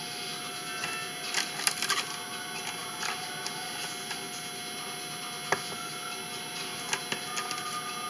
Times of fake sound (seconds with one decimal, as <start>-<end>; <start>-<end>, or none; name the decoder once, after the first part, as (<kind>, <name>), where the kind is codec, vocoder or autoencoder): none